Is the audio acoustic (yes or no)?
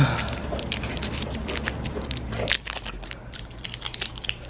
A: yes